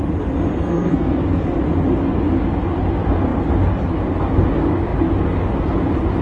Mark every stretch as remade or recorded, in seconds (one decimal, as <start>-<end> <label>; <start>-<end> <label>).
0.0-0.6 recorded; 0.6-1.2 remade; 1.2-6.2 recorded